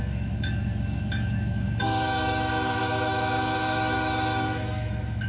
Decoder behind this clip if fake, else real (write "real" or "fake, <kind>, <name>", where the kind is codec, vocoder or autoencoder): fake, autoencoder, DAC-VAE